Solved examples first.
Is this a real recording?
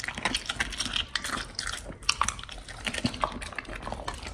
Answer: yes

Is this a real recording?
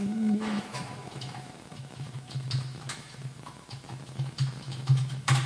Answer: no